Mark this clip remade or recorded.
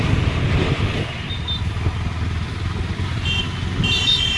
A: recorded